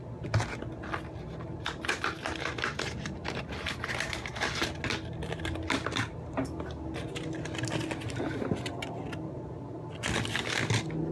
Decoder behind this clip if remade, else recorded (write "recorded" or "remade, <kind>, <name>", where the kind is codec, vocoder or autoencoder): recorded